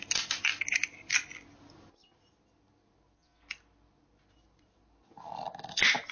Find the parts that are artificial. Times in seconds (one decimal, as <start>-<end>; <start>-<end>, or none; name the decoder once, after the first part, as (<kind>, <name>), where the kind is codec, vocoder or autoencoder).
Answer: none